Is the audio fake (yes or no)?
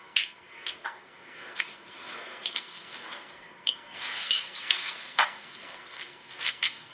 yes